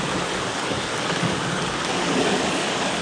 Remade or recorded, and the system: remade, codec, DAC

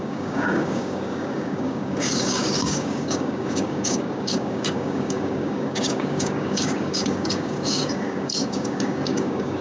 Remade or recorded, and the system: remade, codec, DAC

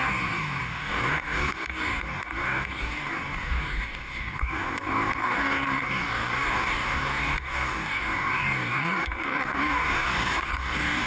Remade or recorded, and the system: remade, codec, DAC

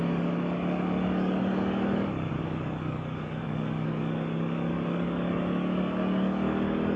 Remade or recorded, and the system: remade, codec, DAC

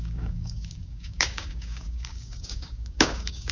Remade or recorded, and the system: remade, codec, DAC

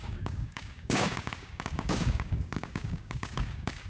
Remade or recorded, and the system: remade, codec, DAC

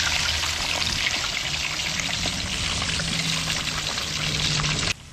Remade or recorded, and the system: recorded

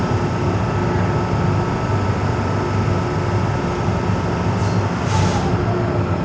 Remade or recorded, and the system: recorded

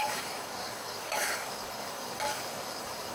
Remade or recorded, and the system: remade, codec, DAC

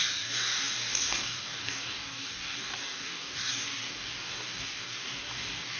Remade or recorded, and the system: remade, codec, DAC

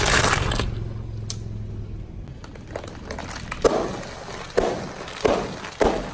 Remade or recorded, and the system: recorded